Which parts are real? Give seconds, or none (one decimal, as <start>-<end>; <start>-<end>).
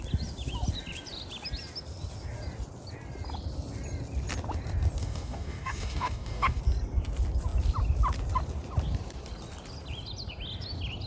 0.0-5.0; 6.6-11.1